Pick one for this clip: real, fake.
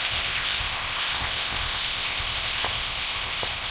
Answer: fake